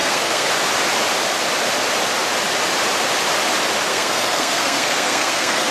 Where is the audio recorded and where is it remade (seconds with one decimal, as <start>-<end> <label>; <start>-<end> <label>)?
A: 0.0-0.5 remade; 0.5-3.9 recorded; 3.9-5.7 remade

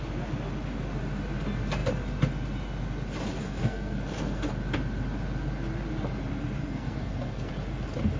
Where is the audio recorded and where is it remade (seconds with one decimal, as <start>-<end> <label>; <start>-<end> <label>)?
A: 0.0-3.4 recorded; 3.4-4.5 remade; 4.5-6.6 recorded; 6.6-7.5 remade; 7.5-8.2 recorded

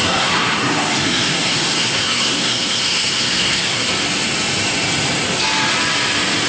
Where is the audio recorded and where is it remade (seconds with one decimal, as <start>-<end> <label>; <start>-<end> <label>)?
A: 0.0-3.9 remade; 3.9-6.5 recorded

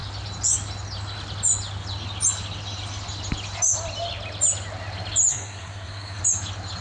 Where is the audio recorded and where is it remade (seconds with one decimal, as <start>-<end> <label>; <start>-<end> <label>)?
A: 0.0-5.3 recorded; 5.3-6.2 remade; 6.2-6.8 recorded

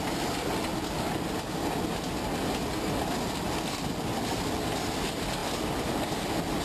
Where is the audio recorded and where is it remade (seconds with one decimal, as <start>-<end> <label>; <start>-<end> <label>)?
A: 0.0-6.6 recorded

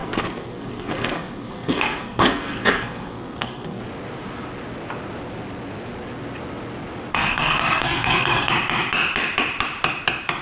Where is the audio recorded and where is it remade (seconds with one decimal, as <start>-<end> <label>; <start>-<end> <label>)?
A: 0.0-3.8 remade; 3.8-7.1 recorded; 7.1-8.5 remade; 8.5-10.4 recorded

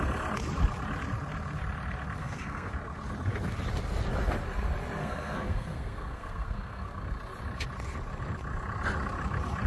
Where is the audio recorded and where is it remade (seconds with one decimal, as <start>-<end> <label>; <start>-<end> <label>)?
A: 0.0-2.2 recorded; 2.2-2.7 remade; 2.7-5.0 recorded; 5.0-7.0 remade; 7.0-9.7 recorded